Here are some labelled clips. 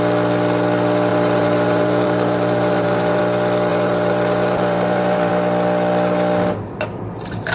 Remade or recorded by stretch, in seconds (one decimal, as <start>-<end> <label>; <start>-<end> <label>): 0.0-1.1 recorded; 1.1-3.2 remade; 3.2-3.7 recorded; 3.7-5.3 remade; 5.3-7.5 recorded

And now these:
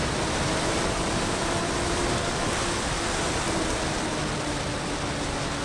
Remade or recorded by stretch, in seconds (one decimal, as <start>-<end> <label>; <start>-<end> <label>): 0.0-2.5 remade; 2.5-5.6 recorded

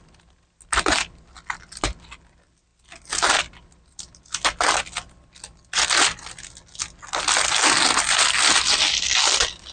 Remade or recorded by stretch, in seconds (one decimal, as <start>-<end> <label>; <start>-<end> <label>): 0.0-9.7 recorded